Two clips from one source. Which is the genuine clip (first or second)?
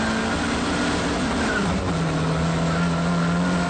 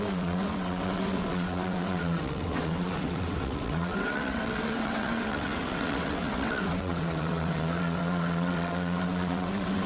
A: first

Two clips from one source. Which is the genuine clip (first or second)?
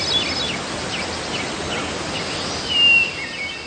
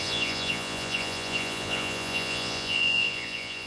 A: first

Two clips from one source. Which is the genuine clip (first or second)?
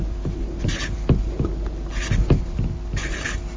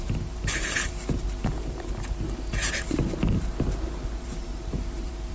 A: first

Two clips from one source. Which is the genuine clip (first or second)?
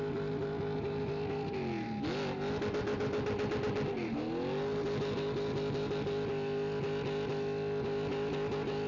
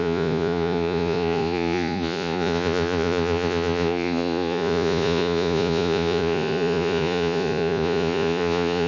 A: first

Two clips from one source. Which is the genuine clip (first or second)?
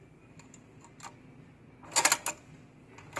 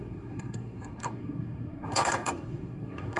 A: first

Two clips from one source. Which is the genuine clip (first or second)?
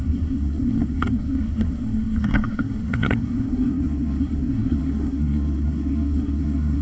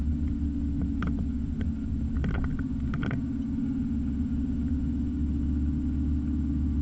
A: second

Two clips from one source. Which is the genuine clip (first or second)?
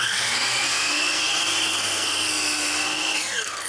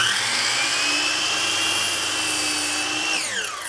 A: second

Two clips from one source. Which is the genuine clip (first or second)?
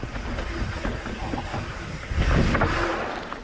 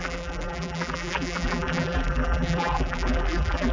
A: first